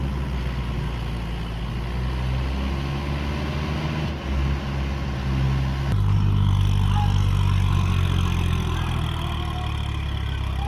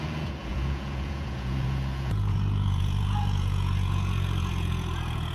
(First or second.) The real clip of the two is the first